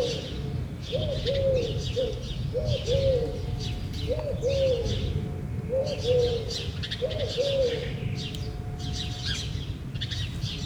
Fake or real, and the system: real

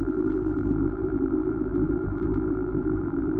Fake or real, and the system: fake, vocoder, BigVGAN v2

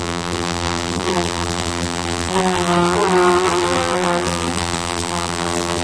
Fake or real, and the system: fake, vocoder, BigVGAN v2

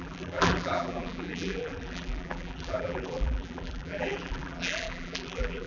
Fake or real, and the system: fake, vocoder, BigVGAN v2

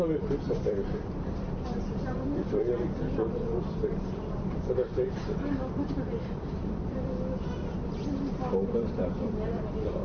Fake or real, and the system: fake, vocoder, BigVGAN v2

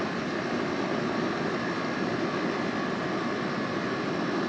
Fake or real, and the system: real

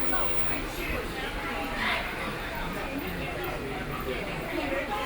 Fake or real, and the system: fake, vocoder, BigVGAN v2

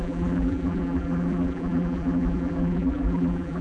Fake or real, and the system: fake, vocoder, BigVGAN v2